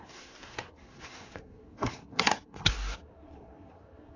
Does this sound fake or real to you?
fake